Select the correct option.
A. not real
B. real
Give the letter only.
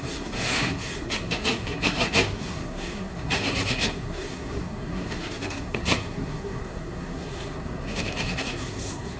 A